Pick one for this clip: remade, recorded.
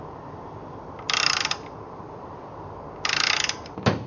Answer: recorded